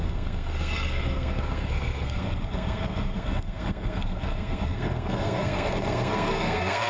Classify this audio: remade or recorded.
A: remade